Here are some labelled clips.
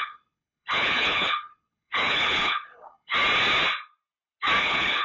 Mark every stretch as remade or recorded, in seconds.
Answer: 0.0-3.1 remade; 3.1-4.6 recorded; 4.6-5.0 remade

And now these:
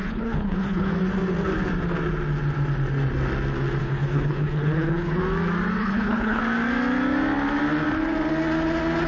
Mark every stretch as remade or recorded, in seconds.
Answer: 0.0-0.9 remade; 0.9-3.8 recorded; 3.8-5.2 remade; 5.2-5.8 recorded; 5.8-6.4 remade; 6.4-9.1 recorded

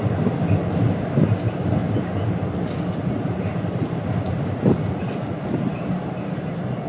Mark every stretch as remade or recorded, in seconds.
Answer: 0.0-6.9 recorded

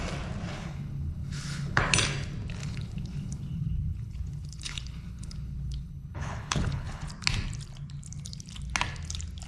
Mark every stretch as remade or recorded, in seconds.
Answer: 0.0-0.5 recorded; 0.5-1.8 remade; 1.8-2.6 recorded; 2.6-7.1 remade; 7.1-9.5 recorded

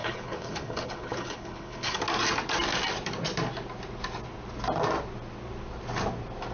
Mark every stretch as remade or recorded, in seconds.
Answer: 0.0-2.0 remade; 2.0-6.5 recorded

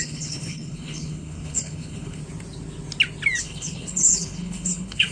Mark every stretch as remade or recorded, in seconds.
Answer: 0.0-2.2 remade; 2.2-3.4 recorded; 3.4-5.1 remade

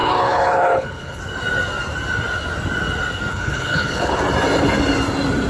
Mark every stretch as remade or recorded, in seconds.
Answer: 0.0-1.2 remade; 1.2-3.3 recorded; 3.3-4.2 remade; 4.2-5.5 recorded

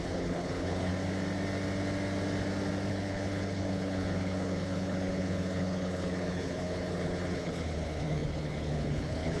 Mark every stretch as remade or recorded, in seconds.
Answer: 0.0-0.9 remade; 0.9-2.9 recorded; 2.9-9.4 remade